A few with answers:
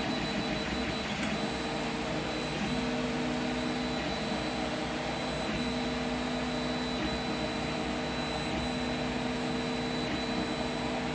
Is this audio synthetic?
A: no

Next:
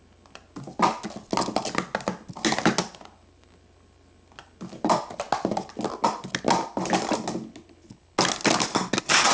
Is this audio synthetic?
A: no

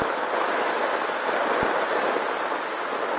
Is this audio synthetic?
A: yes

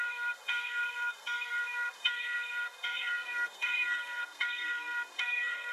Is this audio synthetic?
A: yes